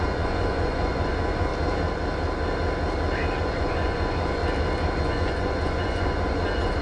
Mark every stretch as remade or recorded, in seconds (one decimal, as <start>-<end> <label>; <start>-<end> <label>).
0.0-1.5 remade; 1.5-3.4 recorded; 3.4-4.4 remade; 4.4-5.0 recorded; 5.0-6.8 remade

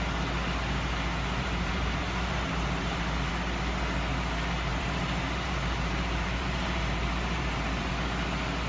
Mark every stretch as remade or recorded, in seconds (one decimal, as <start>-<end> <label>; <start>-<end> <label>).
0.0-1.4 recorded; 1.4-3.3 remade; 3.3-4.7 recorded; 4.7-7.9 remade; 7.9-8.7 recorded